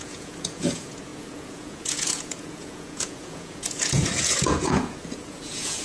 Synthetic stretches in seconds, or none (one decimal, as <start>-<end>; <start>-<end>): 0.0-5.8